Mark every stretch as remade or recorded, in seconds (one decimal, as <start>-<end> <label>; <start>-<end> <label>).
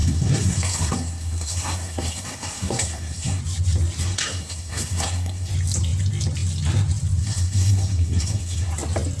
0.0-3.4 remade; 3.4-4.0 recorded; 4.0-5.5 remade; 5.5-7.2 recorded; 7.2-8.7 remade; 8.7-9.2 recorded